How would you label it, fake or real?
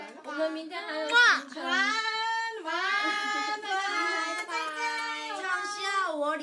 real